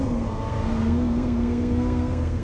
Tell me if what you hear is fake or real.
fake